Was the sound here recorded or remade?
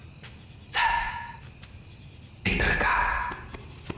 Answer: recorded